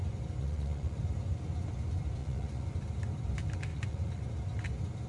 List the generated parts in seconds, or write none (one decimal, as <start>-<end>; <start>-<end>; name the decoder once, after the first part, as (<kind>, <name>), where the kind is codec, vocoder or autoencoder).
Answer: 0.4-1.0 (vocoder, Vocos); 2.2-2.7; 3.7-4.3